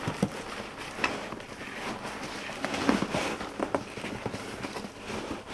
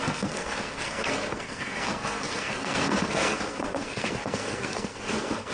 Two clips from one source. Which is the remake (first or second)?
second